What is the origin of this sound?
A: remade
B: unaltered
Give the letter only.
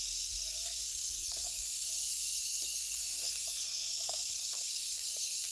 A